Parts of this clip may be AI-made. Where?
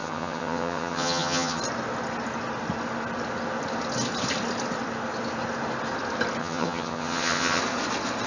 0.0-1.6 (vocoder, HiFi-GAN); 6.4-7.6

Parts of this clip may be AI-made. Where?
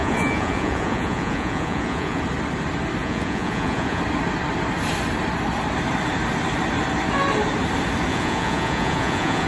0.0-2.2 (vocoder, Vocos); 3.0-4.0; 8.1-9.5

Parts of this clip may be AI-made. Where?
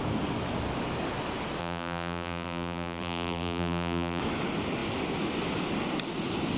1.6-4.2 (vocoder, BigVGAN v2)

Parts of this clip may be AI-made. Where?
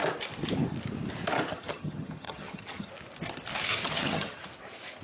1.5-2.9 (vocoder, HiFi-GAN); 3.7-4.5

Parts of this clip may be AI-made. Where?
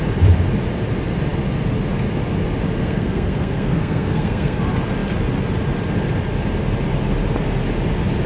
2.8-4.6 (codec, SNAC)